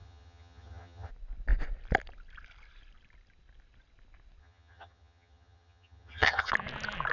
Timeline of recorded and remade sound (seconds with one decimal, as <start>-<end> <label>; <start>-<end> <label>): 0.0-1.1 remade; 1.1-4.4 recorded; 4.4-6.5 remade; 6.5-7.1 recorded